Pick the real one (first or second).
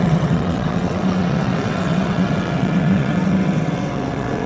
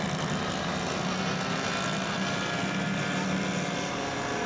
second